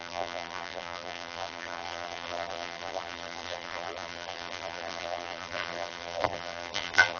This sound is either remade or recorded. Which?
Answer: remade